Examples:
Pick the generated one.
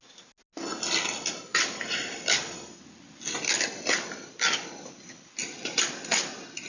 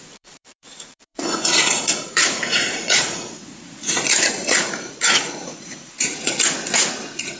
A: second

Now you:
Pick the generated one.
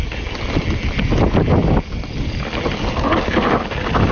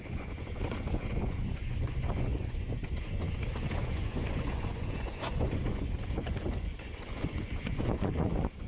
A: second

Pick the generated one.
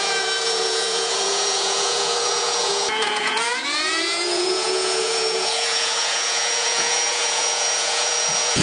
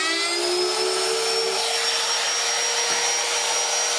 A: first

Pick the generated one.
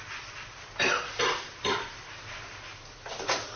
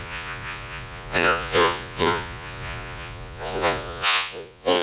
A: second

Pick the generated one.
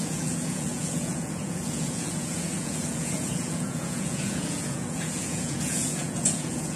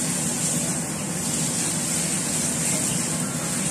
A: first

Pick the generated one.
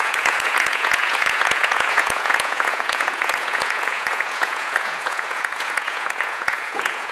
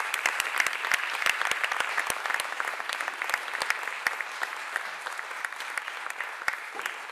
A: first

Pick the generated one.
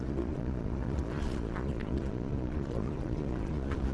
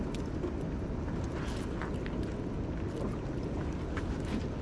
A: first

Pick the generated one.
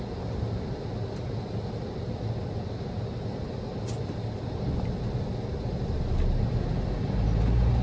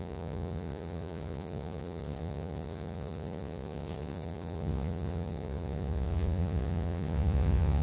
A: second